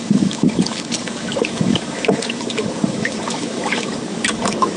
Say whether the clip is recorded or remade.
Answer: remade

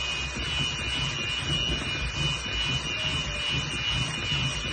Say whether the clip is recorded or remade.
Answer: recorded